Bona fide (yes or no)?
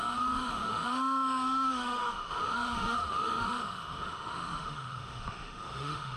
no